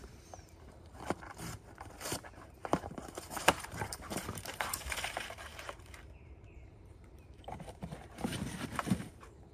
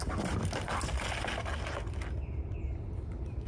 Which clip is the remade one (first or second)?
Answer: first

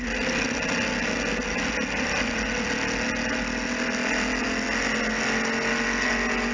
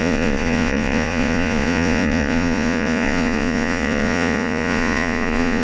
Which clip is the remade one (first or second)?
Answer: second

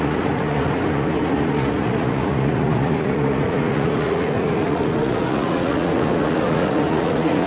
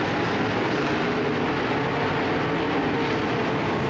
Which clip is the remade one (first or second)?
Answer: first